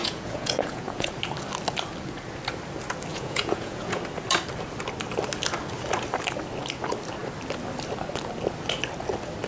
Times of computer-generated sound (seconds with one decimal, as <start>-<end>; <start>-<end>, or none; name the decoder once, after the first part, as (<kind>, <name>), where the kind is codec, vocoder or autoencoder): 0.0-1.1 (vocoder, Vocos); 3.1-4.0

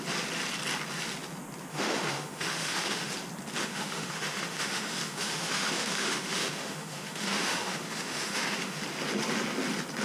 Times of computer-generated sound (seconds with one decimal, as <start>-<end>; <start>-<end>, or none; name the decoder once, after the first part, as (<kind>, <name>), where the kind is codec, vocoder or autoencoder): 1.7-3.1 (autoencoder, DAC-VAE); 3.6-8.8